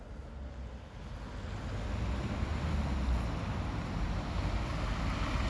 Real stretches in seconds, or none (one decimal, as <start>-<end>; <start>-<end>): 0.0-5.5